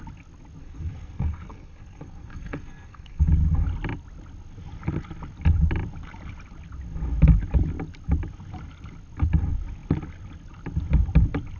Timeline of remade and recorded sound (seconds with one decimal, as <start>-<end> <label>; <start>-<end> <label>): 0.0-0.6 recorded; 0.6-3.3 remade; 3.3-11.6 recorded